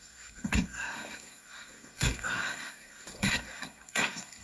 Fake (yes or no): yes